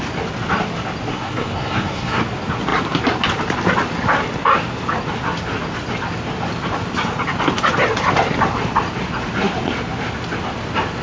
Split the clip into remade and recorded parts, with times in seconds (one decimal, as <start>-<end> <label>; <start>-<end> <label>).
0.0-1.1 recorded; 1.1-2.2 remade; 2.2-11.0 recorded